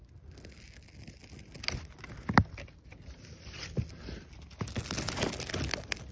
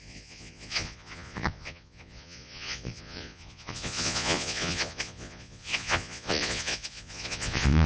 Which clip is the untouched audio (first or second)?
first